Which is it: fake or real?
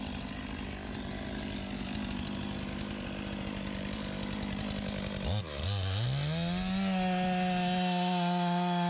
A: real